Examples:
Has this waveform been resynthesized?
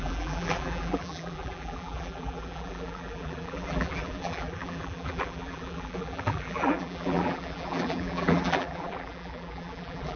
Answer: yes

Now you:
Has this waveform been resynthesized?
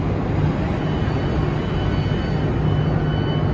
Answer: no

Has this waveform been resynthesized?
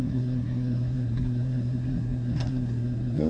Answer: yes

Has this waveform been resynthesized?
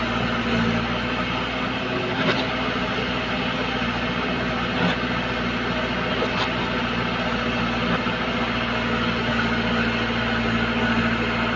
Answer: no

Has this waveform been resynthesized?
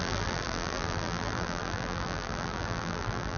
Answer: yes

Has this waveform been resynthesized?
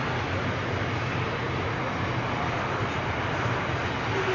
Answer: no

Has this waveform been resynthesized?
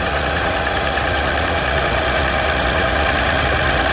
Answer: yes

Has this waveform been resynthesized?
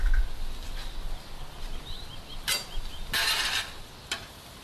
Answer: no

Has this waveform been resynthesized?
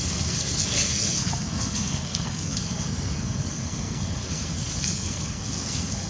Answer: yes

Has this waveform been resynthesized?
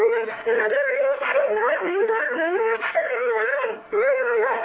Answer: yes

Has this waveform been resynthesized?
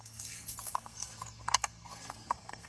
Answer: yes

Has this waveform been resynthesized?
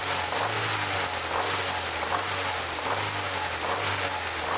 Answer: no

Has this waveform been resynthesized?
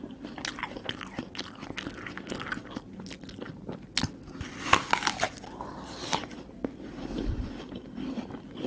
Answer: no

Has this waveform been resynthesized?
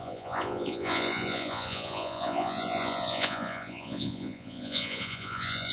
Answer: yes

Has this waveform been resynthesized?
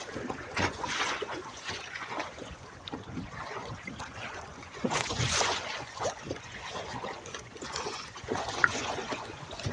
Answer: yes